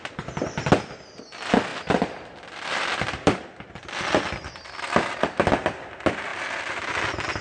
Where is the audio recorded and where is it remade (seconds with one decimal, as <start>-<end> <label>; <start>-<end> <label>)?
0.0-1.7 recorded; 1.7-3.4 remade; 3.4-7.4 recorded